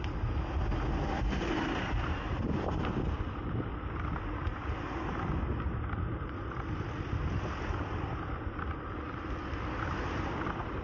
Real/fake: real